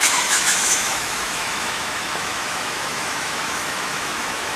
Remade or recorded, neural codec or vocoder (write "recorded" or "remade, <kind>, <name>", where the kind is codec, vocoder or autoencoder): remade, autoencoder, DAC-VAE